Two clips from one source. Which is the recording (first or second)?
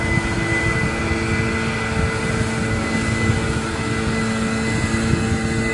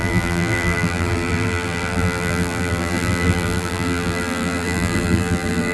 first